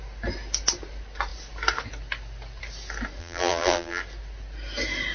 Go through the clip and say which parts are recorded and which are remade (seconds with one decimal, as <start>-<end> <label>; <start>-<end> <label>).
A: 0.0-3.2 recorded; 3.2-4.0 remade; 4.0-5.1 recorded